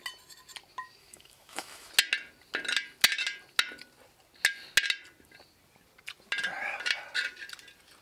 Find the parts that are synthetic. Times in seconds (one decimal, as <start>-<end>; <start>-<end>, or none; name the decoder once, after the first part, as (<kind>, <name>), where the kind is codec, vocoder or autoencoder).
1.0-1.9 (autoencoder, DAC-VAE)